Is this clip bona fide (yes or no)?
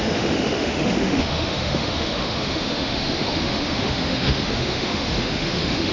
no